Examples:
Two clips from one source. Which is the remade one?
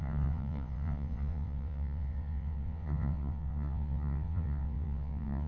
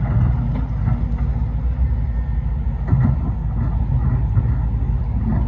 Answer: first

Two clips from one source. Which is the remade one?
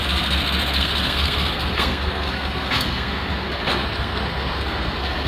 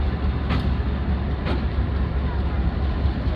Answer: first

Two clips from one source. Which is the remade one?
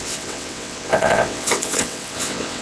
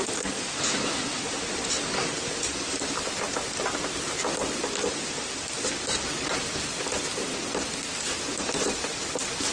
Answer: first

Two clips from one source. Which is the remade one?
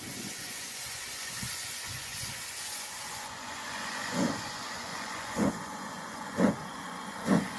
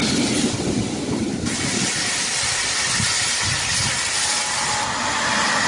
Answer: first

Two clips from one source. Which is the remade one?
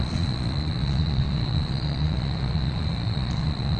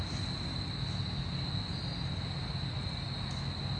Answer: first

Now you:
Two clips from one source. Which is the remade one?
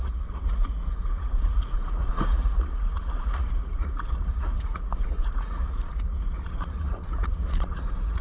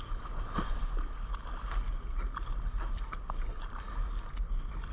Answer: first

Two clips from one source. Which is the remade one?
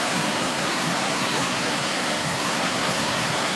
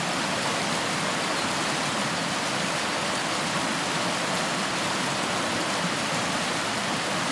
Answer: first